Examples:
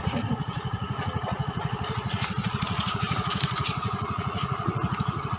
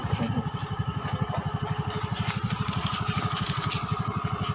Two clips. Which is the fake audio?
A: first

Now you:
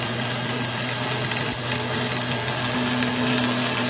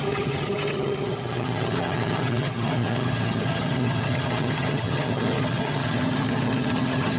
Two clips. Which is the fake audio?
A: second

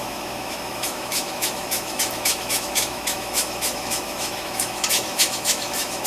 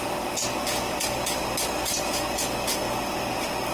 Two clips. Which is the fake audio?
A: first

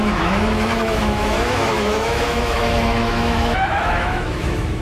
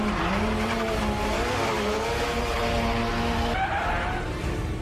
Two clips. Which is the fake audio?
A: first